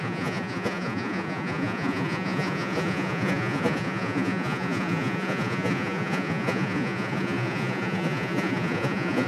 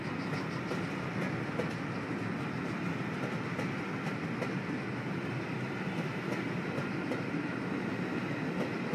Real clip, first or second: second